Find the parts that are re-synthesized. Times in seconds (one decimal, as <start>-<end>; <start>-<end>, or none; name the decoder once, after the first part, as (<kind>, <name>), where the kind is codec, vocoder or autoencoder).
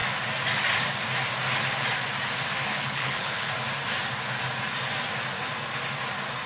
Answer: 2.7-3.5 (codec, HILCodec)